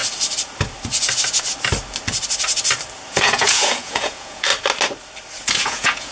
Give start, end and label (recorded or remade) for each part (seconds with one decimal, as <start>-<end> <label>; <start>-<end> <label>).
0.0-3.1 recorded; 3.1-4.5 remade; 4.5-5.6 recorded; 5.6-6.1 remade